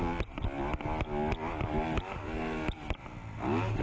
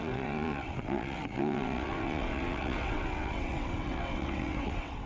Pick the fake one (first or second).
second